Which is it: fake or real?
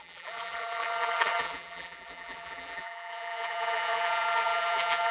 fake